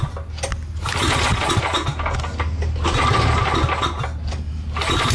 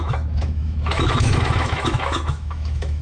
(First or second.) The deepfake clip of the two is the second